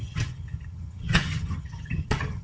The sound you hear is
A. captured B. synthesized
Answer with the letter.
B